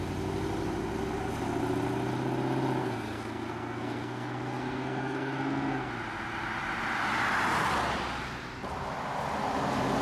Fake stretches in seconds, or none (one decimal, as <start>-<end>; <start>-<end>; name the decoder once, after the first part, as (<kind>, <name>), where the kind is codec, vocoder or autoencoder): 2.8-5.9 (codec, SNAC)